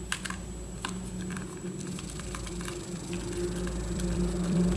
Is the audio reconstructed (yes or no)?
yes